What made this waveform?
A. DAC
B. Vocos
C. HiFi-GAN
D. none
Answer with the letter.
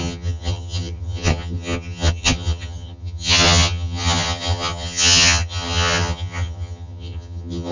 C